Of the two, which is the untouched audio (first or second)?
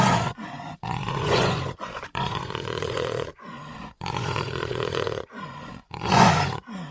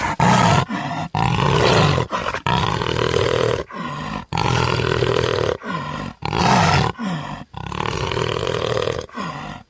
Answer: second